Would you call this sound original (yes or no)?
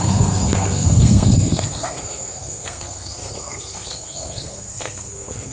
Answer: no